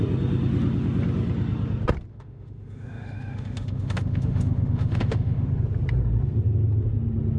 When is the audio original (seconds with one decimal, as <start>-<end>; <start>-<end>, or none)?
0.0-2.1; 5.5-7.4